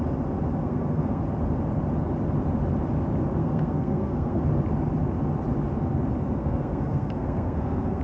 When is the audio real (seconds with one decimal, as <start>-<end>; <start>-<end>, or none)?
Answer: 0.0-0.6; 1.2-3.4; 4.4-6.4